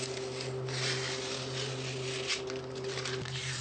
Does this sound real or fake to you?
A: real